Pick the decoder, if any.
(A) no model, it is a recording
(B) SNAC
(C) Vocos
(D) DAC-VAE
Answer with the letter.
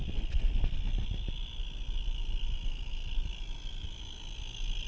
A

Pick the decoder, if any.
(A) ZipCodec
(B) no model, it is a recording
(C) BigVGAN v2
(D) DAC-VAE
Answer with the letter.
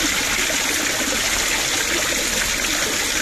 B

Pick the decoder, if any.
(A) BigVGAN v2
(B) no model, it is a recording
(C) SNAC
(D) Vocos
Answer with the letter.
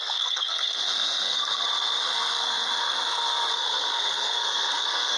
C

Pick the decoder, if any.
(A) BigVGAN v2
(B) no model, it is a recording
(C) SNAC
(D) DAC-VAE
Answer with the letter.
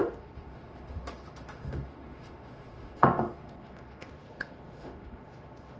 D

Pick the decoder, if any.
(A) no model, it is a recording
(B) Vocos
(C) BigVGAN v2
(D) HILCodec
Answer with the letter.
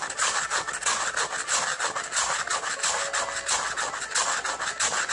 A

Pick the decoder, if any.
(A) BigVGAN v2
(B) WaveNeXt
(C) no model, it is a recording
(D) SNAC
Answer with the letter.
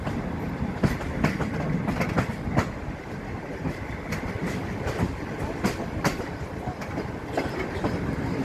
C